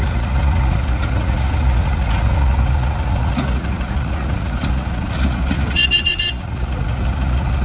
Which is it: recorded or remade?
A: remade